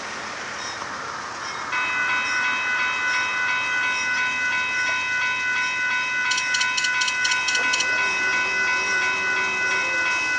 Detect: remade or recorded recorded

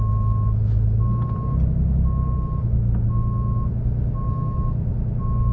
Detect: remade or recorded recorded